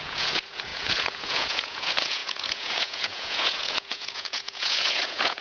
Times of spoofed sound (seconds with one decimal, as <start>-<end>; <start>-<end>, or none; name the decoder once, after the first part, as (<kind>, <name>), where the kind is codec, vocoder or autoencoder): 0.0-5.4 (vocoder, Vocos)